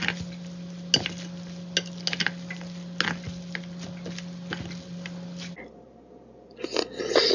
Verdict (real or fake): real